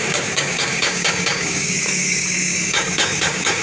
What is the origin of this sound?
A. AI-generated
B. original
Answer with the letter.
A